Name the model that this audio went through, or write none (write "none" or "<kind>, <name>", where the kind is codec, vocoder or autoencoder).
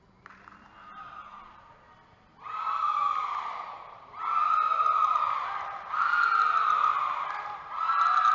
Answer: none